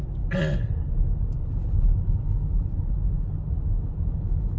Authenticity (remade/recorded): recorded